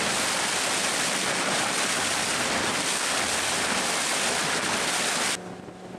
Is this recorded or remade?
recorded